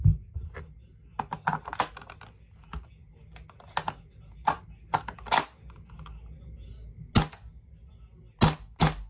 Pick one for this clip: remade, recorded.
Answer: recorded